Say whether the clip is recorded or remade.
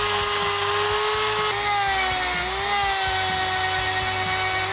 recorded